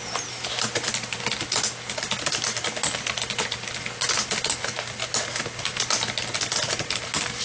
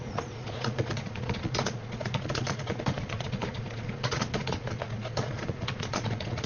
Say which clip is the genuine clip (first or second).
first